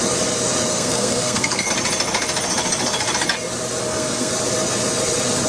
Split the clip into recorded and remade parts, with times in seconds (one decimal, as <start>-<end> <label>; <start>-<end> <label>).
0.0-0.7 recorded; 0.7-1.7 remade; 1.7-3.8 recorded; 3.8-4.3 remade; 4.3-5.5 recorded